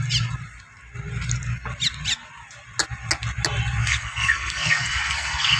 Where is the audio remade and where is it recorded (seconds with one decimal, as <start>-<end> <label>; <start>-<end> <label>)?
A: 0.0-3.8 recorded; 3.8-5.6 remade